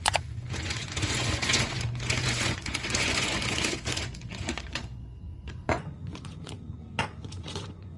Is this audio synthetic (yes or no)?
yes